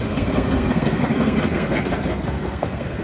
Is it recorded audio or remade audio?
remade